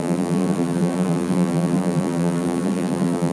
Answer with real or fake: fake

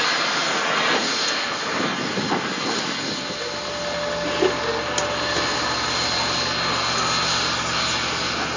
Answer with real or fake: real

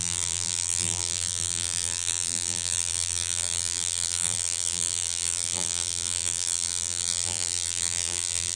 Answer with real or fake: fake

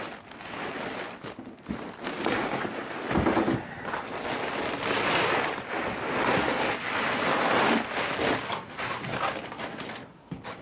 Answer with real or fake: real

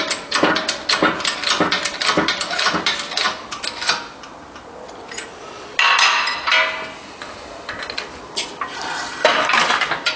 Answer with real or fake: real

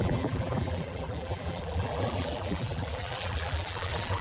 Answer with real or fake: fake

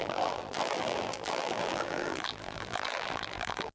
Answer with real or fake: fake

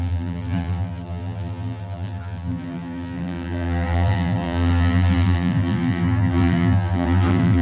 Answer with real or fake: fake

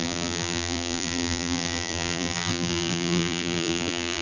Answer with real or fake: fake